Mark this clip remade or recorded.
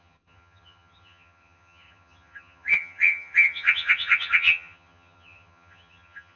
remade